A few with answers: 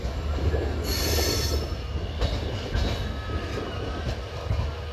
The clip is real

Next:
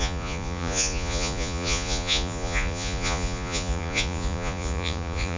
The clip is fake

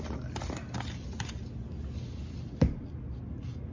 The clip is real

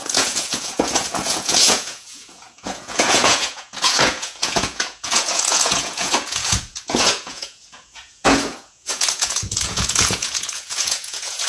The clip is fake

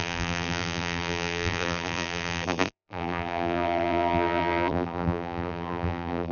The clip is fake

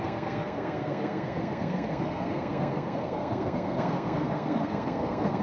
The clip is fake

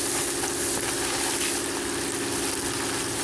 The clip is real